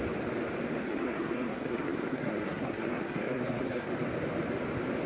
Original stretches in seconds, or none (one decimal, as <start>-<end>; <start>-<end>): 0.0-0.8; 3.9-5.1